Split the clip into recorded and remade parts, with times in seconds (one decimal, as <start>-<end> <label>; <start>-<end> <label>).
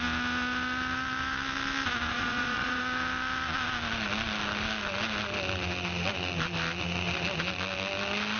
0.0-2.1 recorded; 2.1-2.8 remade; 2.8-8.4 recorded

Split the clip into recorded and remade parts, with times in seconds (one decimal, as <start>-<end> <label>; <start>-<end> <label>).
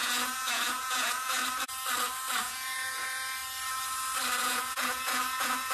0.0-1.4 remade; 1.4-2.4 recorded; 2.4-3.4 remade; 3.4-4.4 recorded; 4.4-5.7 remade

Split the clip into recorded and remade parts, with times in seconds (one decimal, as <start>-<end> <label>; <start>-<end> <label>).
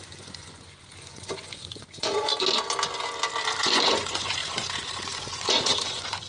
0.0-2.3 remade; 2.3-3.6 recorded; 3.6-6.3 remade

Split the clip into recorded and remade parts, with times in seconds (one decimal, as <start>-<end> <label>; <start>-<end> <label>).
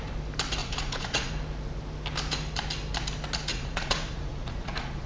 0.0-0.6 recorded; 0.6-1.3 remade; 1.3-3.5 recorded; 3.5-5.1 remade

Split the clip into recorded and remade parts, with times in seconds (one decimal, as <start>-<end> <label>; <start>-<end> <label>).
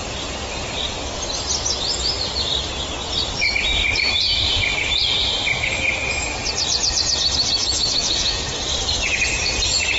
0.0-7.6 recorded; 7.6-8.4 remade; 8.4-10.0 recorded